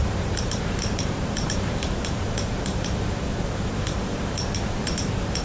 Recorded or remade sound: remade